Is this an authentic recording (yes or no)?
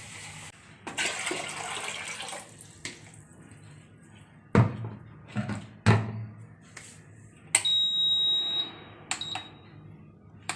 yes